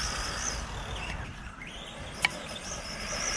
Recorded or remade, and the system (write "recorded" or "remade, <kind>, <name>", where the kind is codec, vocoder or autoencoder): recorded